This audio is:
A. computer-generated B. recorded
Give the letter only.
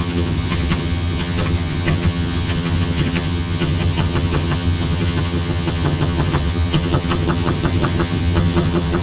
A